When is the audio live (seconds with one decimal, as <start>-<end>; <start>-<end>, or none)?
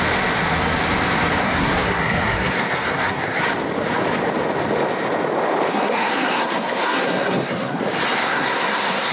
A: 0.0-1.4; 3.4-5.7; 7.8-8.2